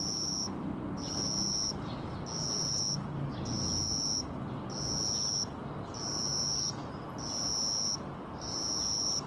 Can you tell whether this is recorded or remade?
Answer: recorded